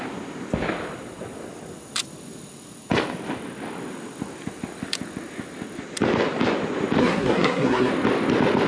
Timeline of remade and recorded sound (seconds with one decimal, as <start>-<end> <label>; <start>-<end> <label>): 0.0-7.0 recorded; 7.0-7.9 remade; 7.9-8.7 recorded